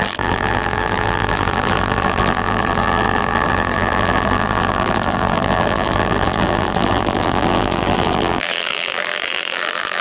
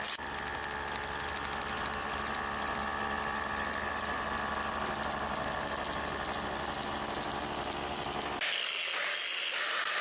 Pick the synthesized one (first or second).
first